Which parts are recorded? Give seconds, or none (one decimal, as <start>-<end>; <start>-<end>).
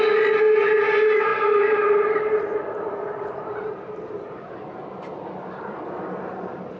0.0-1.3; 4.4-6.8